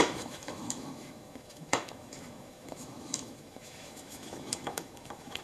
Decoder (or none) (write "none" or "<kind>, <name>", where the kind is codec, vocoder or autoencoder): autoencoder, DAC-VAE